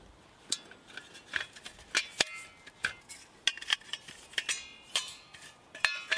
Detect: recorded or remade recorded